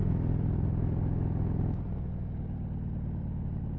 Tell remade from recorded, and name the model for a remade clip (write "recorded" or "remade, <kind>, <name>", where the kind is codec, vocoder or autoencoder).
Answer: recorded